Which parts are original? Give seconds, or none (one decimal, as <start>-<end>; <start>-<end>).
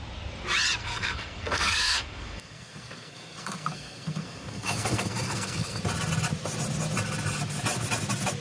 0.0-0.8; 5.8-8.4